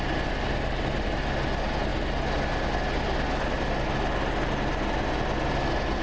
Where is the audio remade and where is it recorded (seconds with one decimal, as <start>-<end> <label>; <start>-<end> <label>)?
0.0-6.0 recorded